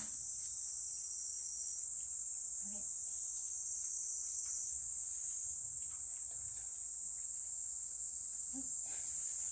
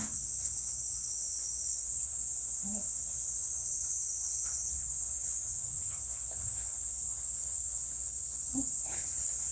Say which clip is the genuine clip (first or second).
first